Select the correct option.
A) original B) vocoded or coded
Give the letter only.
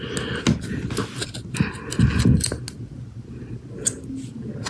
A